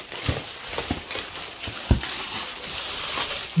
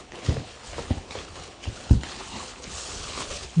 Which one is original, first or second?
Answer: first